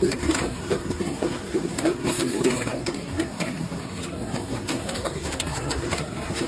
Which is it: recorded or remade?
remade